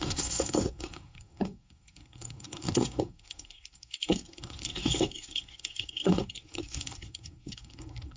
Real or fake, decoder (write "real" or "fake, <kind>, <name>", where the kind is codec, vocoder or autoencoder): fake, codec, SNAC